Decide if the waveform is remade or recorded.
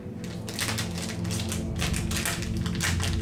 recorded